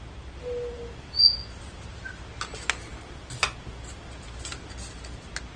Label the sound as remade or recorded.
recorded